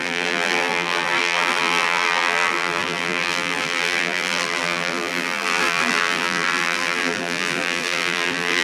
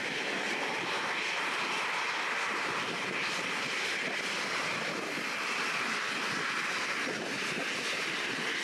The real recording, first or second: second